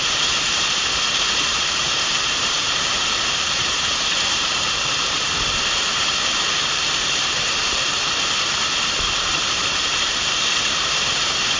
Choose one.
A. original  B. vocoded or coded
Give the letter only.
B